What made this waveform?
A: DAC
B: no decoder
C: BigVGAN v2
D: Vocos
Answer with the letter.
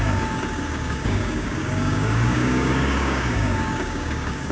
A